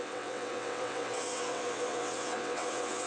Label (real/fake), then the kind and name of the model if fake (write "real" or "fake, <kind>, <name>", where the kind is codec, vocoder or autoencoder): fake, vocoder, WaveNeXt